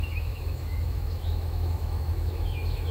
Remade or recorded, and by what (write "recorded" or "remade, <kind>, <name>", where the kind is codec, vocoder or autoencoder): remade, autoencoder, DAC-VAE